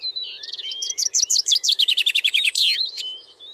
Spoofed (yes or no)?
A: yes